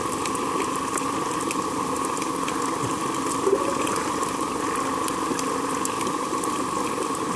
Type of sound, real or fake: real